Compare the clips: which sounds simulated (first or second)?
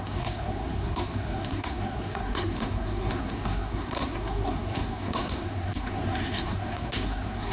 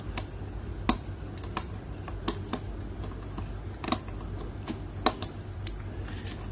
first